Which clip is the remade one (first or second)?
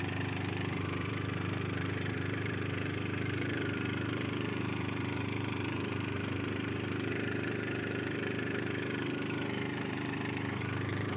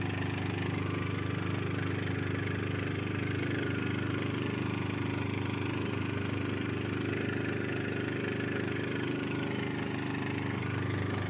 first